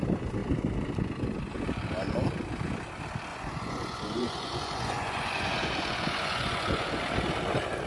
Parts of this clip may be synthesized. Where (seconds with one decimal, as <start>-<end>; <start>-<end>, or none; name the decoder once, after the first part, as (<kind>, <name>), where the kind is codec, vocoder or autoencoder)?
3.3-7.0 (vocoder, Vocos)